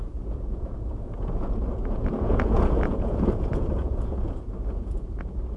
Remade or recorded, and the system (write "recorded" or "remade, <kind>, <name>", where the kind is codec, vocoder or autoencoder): remade, vocoder, Vocos